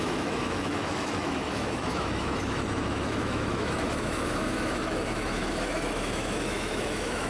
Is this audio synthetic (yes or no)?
yes